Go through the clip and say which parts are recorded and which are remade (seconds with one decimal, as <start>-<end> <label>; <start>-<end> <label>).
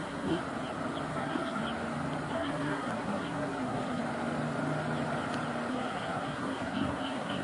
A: 0.0-0.4 remade; 0.4-1.1 recorded; 1.1-1.6 remade; 1.6-2.3 recorded; 2.3-4.0 remade; 4.0-5.7 recorded; 5.7-7.4 remade